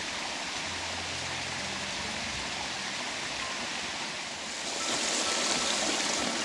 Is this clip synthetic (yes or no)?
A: no